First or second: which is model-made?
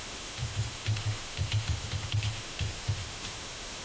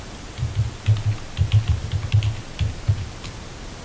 first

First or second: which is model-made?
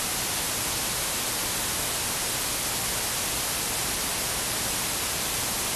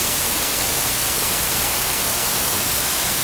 second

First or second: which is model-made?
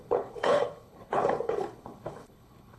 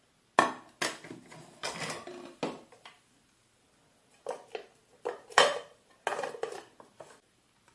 first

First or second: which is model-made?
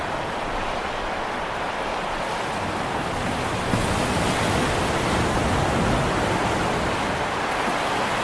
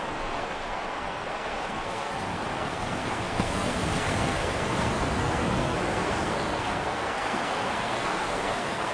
second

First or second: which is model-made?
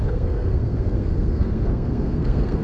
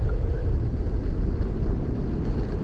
first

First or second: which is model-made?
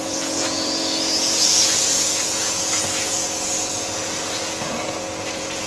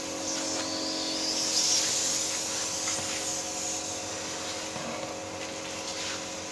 first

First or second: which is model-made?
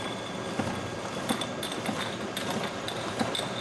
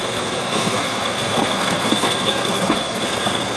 second